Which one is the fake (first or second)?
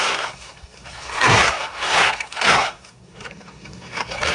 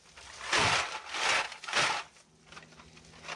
first